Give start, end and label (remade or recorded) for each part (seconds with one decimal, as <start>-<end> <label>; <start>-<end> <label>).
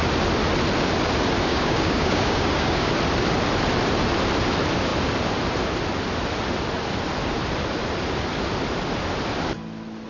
0.0-1.5 recorded; 1.5-2.9 remade; 2.9-10.1 recorded